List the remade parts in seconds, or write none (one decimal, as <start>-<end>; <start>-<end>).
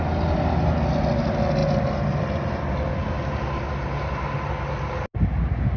none